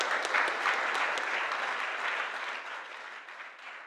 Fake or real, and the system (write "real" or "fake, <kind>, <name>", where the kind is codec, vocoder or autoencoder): real